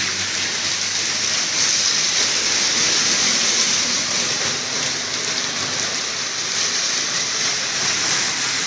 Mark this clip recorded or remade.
recorded